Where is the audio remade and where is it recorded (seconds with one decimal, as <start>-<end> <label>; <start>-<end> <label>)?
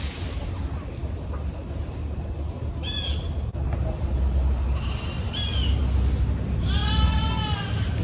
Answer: 0.0-6.8 recorded; 6.8-8.0 remade